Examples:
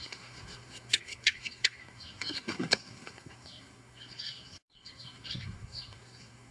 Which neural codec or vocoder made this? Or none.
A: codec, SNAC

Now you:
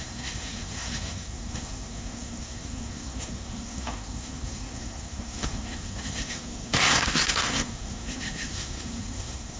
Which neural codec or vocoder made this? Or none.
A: codec, SNAC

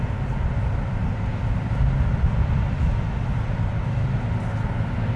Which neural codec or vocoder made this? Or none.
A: none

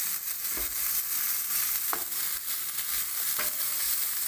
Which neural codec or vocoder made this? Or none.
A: none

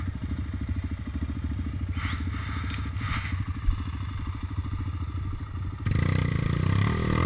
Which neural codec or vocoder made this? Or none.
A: none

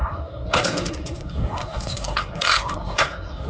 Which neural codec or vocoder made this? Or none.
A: codec, SNAC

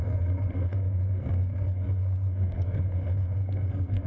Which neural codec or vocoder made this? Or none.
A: codec, SNAC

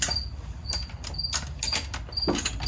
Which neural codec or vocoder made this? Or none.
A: none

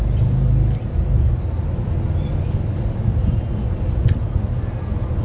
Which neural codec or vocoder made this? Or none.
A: none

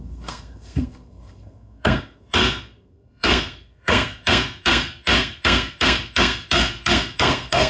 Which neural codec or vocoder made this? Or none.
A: codec, SNAC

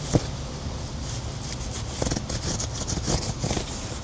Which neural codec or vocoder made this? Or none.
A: none